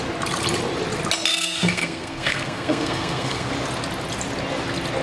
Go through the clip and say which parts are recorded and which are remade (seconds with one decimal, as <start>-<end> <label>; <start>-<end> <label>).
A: 0.0-1.3 recorded; 1.3-3.5 remade; 3.5-5.0 recorded